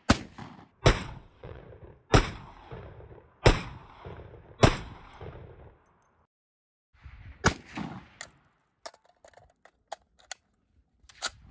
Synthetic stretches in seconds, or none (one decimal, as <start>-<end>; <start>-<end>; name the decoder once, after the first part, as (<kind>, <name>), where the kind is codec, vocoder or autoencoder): 1.0-1.6 (vocoder, WaveNeXt)